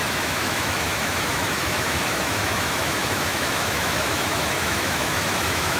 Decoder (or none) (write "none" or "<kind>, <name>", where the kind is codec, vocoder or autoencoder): autoencoder, DAC-VAE